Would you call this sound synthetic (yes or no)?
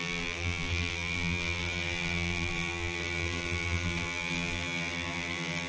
yes